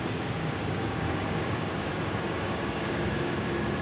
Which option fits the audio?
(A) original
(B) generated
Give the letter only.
B